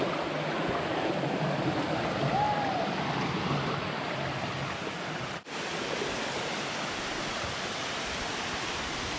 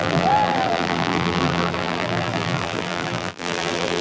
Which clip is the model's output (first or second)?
second